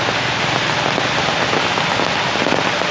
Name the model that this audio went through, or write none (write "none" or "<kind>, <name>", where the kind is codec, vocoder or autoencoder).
none